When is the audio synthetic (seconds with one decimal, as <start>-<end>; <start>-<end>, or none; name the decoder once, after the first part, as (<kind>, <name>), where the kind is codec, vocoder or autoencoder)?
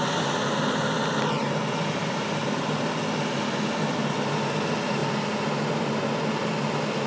none